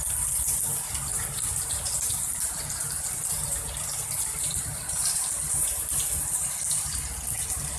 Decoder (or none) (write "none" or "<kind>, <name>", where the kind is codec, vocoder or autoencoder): none